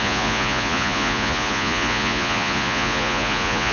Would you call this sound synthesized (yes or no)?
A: yes